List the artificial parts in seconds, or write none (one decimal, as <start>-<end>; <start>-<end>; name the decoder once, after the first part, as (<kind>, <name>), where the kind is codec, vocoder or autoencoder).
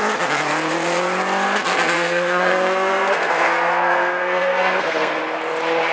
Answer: 1.7-5.2 (codec, SNAC)